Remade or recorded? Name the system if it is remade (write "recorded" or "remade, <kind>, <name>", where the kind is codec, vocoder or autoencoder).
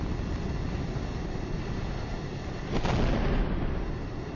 recorded